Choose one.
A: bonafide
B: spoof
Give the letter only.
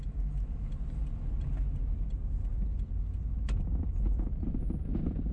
A